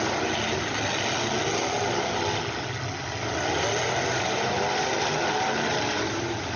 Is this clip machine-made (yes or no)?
no